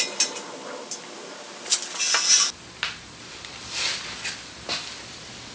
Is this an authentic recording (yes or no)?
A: yes